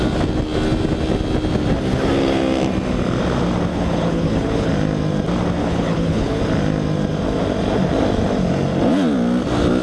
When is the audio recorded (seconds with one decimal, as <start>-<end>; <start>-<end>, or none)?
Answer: 0.0-3.7; 4.7-5.6; 6.4-9.8